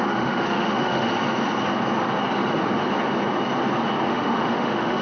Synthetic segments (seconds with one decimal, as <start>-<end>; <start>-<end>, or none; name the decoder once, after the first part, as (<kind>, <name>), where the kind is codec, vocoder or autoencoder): 0.0-1.1 (autoencoder, DAC-VAE); 4.1-5.0